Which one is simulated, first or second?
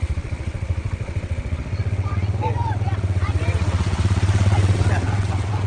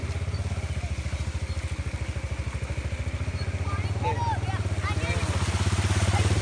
first